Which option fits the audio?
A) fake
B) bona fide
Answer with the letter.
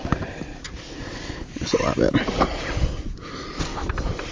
B